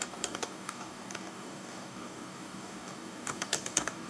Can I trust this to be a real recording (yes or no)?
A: no